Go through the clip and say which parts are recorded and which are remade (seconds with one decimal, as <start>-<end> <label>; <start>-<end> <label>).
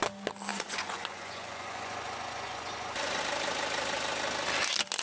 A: 0.0-0.5 recorded; 0.5-3.2 remade; 3.2-5.0 recorded